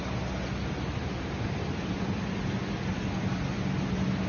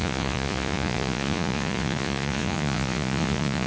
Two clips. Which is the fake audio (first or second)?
second